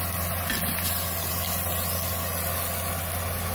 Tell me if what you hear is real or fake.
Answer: real